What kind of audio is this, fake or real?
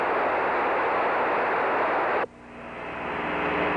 real